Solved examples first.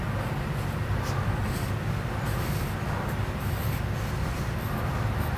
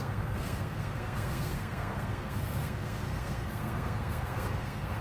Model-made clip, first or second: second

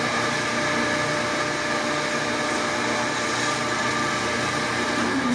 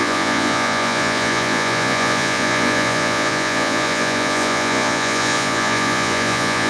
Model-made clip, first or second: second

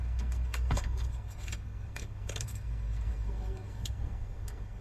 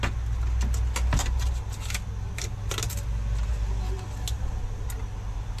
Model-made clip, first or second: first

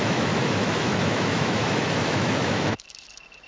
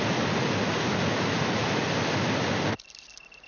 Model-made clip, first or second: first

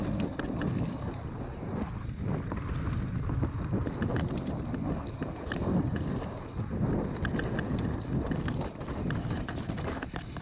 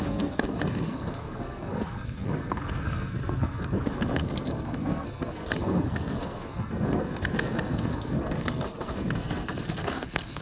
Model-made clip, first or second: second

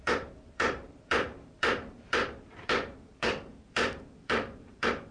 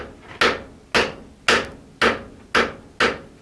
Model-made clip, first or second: first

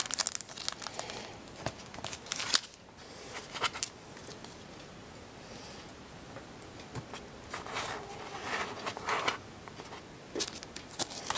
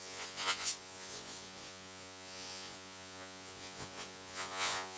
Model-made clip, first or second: second